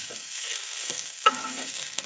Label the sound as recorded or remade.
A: remade